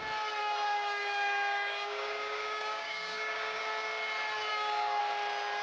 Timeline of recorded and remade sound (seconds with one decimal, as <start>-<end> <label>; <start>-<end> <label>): 0.0-0.4 recorded; 0.4-3.6 remade; 3.6-4.5 recorded; 4.5-5.0 remade; 5.0-5.6 recorded